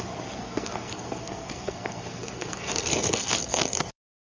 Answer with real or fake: fake